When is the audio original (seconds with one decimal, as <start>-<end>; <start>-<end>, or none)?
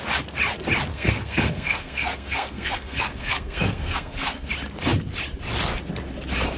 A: 0.0-0.9; 4.5-6.6